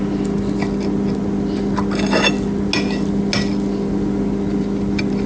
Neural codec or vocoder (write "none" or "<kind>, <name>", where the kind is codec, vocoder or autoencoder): none